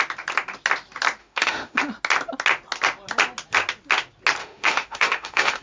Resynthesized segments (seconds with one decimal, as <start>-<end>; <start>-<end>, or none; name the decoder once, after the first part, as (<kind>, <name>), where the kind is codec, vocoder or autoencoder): 1.2-1.8 (autoencoder, DAC-VAE); 4.4-5.6